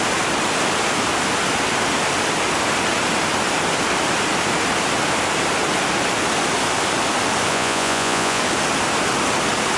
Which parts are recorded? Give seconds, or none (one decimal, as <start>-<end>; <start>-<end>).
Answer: 0.0-7.5; 8.4-9.8